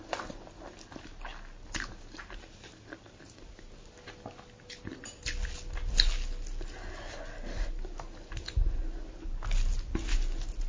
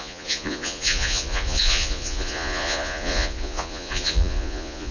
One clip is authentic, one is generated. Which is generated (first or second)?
second